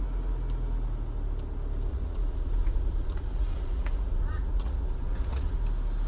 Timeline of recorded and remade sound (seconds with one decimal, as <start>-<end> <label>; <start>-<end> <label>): 0.0-1.9 recorded; 1.9-5.6 remade; 5.6-6.1 recorded